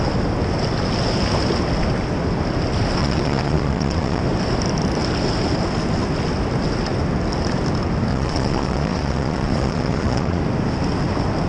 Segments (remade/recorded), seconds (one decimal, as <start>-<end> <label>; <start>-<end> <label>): 0.0-3.0 recorded; 3.0-4.2 remade; 4.2-8.1 recorded; 8.1-10.4 remade; 10.4-11.5 recorded